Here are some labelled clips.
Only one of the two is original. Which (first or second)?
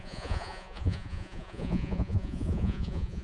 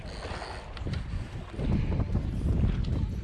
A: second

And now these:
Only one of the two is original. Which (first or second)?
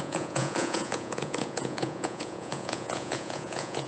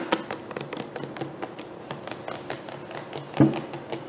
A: second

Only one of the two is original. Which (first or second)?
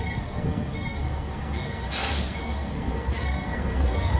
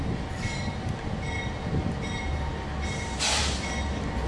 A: second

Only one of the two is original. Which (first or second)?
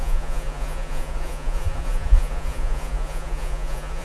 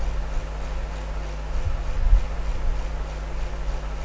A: second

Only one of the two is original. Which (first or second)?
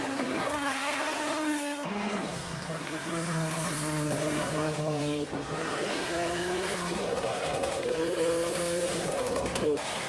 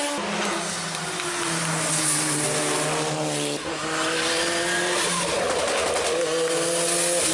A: second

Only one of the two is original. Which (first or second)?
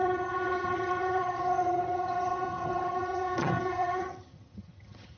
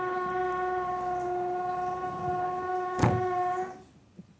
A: second